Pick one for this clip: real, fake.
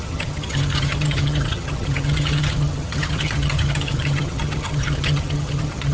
fake